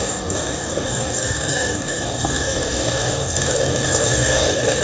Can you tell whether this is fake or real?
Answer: fake